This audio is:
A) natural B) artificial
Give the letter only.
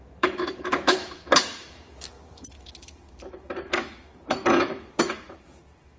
B